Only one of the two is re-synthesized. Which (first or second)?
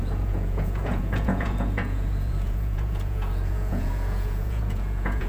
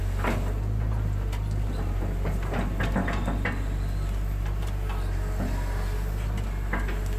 first